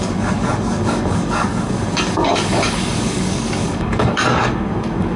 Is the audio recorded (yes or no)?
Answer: no